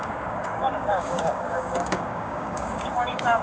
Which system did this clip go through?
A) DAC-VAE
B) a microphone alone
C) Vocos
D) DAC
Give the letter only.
D